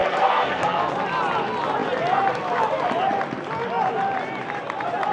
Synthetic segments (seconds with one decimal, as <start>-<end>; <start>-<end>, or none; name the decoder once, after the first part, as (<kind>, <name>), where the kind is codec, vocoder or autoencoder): 0.0-0.9 (codec, SNAC)